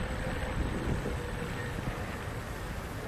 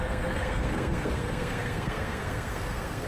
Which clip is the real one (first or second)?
first